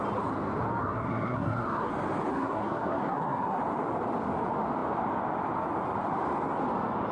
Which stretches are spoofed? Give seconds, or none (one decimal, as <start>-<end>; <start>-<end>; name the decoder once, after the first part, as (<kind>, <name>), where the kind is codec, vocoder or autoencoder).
0.8-1.9 (codec, SNAC); 2.3-3.6